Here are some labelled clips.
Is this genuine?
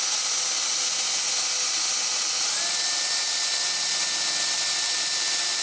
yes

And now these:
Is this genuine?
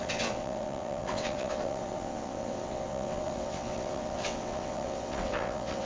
no